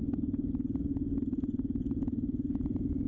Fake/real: real